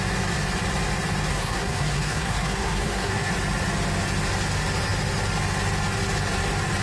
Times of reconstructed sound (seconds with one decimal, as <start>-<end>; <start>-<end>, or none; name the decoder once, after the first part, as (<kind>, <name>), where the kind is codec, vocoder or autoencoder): 1.3-3.3 (codec, SNAC)

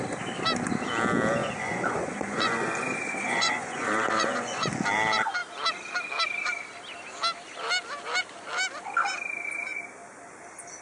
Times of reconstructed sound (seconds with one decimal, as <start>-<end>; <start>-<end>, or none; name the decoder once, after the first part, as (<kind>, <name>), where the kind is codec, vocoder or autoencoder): 1.4-4.7 (vocoder, Vocos)